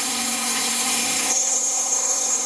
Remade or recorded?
remade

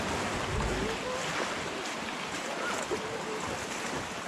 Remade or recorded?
recorded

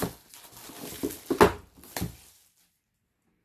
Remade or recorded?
recorded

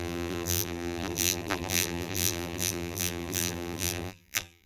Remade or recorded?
remade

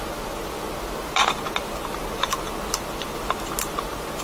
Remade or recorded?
recorded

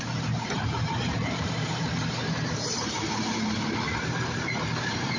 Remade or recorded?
remade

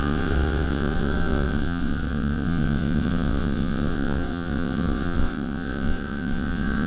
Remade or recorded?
remade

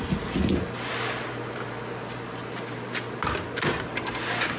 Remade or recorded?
recorded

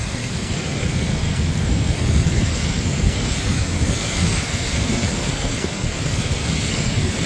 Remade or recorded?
remade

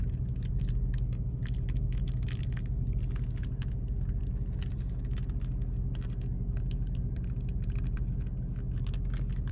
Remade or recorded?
recorded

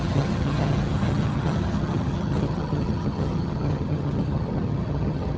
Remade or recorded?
remade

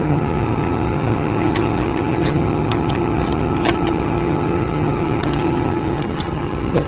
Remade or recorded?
remade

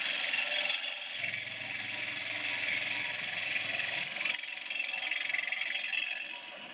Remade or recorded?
recorded